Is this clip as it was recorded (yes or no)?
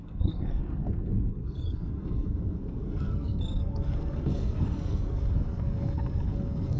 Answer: no